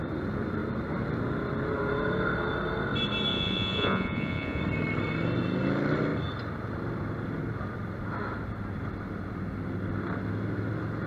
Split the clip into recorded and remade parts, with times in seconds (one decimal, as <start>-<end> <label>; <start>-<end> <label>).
0.0-3.3 recorded; 3.3-4.6 remade; 4.6-11.1 recorded